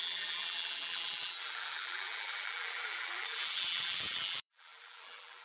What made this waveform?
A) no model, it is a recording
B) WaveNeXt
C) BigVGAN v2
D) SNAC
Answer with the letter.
C